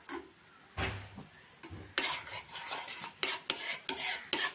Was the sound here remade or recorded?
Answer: recorded